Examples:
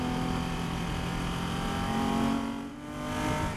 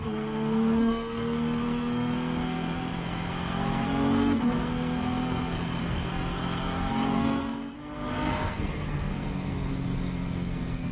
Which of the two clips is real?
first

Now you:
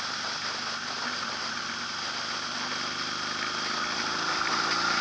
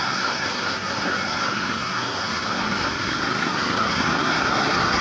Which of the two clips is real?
first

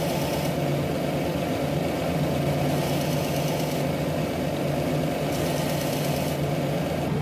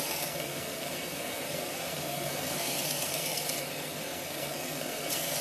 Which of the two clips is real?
first